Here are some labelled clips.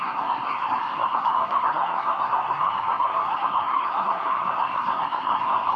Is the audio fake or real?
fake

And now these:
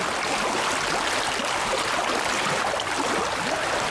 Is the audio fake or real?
real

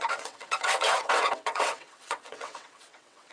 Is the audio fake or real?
fake